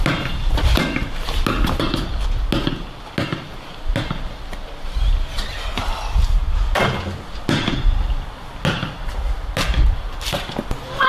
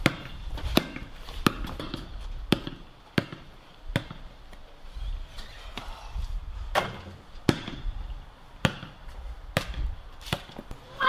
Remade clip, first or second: second